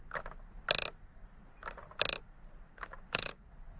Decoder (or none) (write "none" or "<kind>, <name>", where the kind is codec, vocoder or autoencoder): none